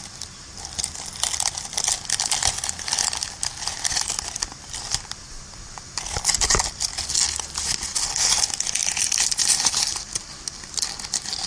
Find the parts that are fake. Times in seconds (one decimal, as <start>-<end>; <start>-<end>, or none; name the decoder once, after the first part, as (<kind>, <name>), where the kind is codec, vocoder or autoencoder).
none